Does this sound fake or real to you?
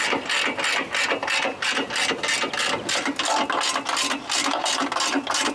real